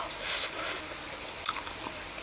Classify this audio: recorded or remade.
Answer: recorded